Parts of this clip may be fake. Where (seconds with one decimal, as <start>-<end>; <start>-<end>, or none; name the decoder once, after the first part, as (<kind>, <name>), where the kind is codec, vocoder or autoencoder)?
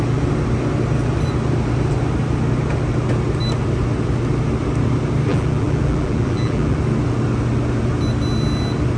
5.3-6.8 (vocoder, BigVGAN v2)